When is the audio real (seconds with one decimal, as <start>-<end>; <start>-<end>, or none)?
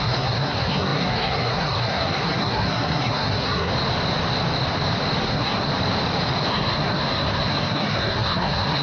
3.7-5.2; 5.7-6.5